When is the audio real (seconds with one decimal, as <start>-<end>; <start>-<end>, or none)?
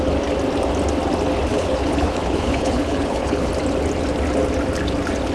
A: 0.0-1.5; 3.5-5.3